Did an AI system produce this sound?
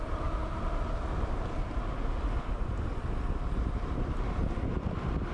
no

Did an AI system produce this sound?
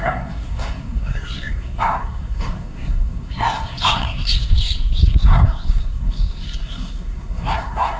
yes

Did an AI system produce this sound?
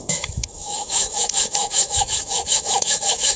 yes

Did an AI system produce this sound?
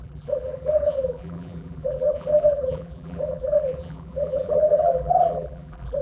yes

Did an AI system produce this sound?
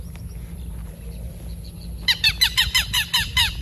no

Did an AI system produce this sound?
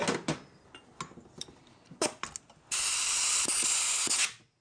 no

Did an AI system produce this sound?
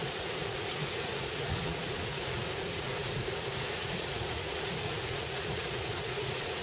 yes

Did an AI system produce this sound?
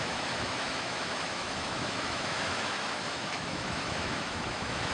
yes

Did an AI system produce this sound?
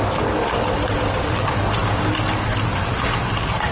yes